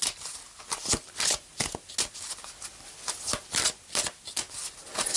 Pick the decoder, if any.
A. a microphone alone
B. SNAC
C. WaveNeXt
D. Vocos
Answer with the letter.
A